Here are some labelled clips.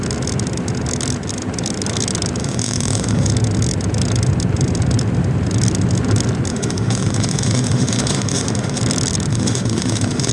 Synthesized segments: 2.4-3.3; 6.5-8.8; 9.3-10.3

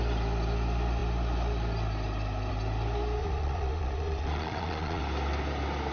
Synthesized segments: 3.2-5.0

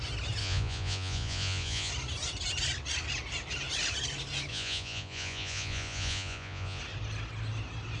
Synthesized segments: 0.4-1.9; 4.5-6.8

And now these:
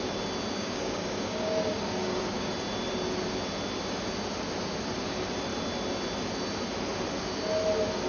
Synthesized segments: 0.6-2.5

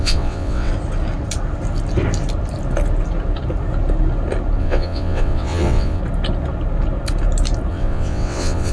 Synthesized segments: 0.0-0.7; 4.6-6.0; 7.7-8.7

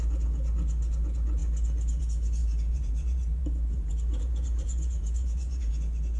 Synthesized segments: 2.4-5.7

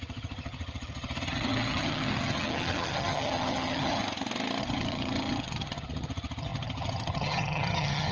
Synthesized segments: 0.0-4.0; 4.6-8.1

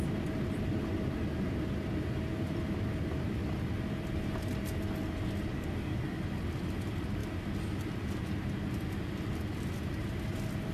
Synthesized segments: 5.5-6.2